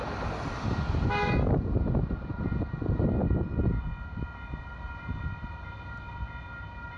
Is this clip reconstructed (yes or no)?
no